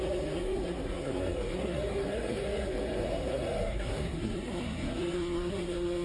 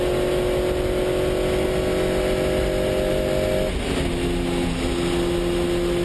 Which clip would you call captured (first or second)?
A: second